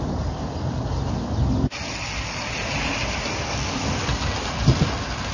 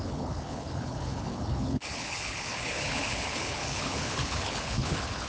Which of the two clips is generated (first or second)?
second